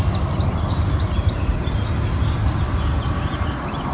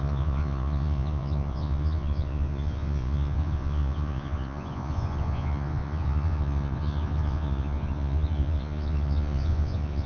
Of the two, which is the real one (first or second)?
first